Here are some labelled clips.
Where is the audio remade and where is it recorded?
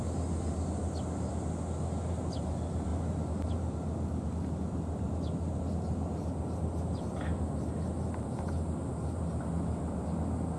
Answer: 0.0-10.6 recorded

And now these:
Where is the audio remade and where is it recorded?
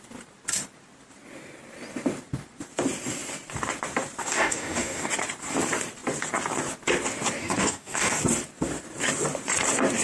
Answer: 0.0-4.2 recorded; 4.2-5.1 remade; 5.1-7.4 recorded; 7.4-8.2 remade; 8.2-10.0 recorded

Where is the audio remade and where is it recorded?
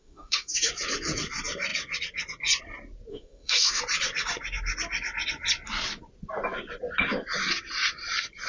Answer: 0.0-0.7 remade; 0.7-3.1 recorded; 3.1-3.8 remade; 3.8-8.5 recorded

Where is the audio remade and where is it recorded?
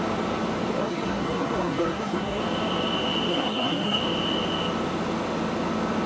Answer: 0.0-0.8 recorded; 0.8-2.4 remade; 2.4-3.3 recorded; 3.3-4.0 remade; 4.0-6.1 recorded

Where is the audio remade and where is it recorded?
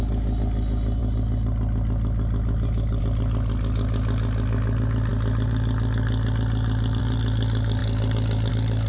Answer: 0.0-8.9 recorded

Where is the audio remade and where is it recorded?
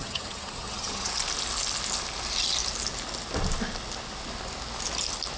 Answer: 0.0-1.1 remade; 1.1-5.4 recorded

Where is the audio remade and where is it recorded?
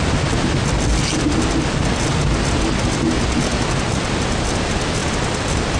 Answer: 0.0-5.8 recorded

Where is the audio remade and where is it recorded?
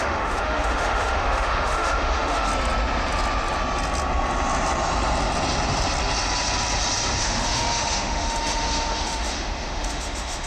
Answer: 0.0-2.5 remade; 2.5-7.2 recorded; 7.2-10.5 remade